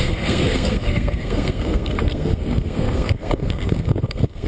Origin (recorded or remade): remade